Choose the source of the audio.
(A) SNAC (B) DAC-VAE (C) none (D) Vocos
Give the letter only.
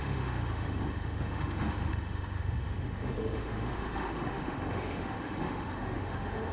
B